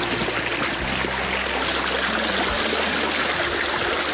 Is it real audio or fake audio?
real